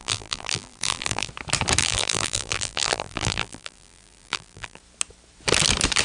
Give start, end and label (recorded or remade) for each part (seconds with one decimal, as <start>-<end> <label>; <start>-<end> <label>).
0.0-1.3 remade; 1.3-1.8 recorded; 1.8-4.8 remade; 4.8-6.0 recorded